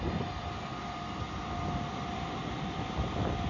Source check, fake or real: fake